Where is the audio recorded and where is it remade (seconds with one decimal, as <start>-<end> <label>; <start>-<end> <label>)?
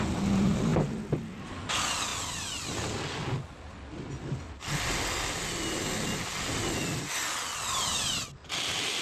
0.0-9.0 recorded